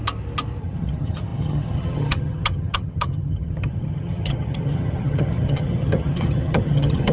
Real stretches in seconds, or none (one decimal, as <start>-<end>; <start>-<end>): 0.0-0.6